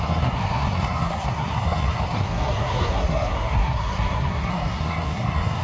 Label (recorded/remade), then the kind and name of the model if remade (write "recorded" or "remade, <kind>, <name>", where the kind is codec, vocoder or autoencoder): remade, codec, SNAC